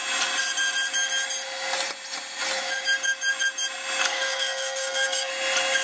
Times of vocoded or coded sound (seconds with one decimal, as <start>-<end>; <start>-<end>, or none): 4.0-5.3